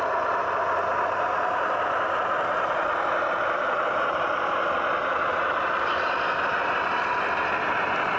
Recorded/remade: recorded